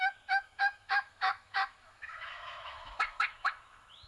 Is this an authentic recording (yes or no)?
no